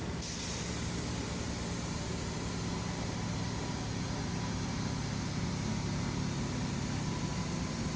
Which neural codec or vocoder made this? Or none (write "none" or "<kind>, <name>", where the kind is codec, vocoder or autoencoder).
none